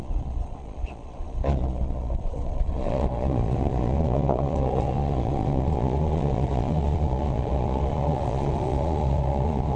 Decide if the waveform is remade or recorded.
remade